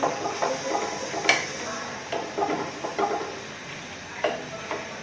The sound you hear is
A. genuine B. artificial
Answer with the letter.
A